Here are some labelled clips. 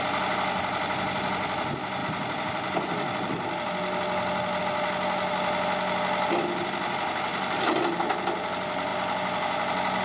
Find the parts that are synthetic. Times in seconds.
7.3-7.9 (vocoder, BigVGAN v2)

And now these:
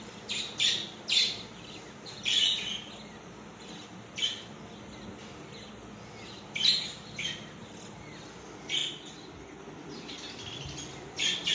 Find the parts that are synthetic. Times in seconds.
none

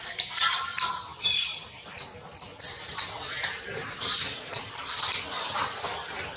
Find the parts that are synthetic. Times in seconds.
0.0-6.4 (vocoder, BigVGAN v2)

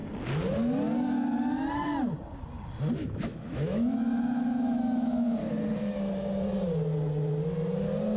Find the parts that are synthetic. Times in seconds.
3.0-5.5 (autoencoder, DAC-VAE)